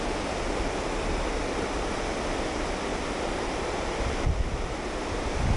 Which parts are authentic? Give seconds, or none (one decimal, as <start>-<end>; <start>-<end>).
0.0-5.6